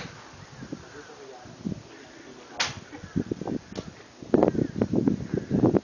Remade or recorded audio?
recorded